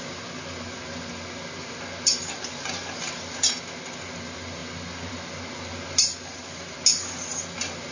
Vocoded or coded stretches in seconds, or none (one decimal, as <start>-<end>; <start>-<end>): none